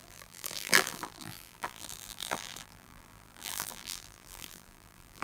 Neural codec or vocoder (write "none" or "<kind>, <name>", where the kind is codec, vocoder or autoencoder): vocoder, BigVGAN v2